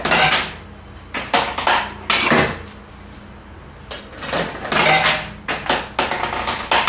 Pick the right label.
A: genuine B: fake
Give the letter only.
A